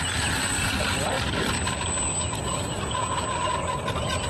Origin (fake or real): real